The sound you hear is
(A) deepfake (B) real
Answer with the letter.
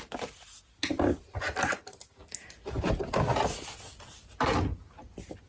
B